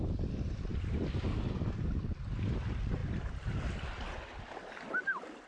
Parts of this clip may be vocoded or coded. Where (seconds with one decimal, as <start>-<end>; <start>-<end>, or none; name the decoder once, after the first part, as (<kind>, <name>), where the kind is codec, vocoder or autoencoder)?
none